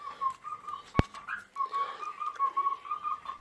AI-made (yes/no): no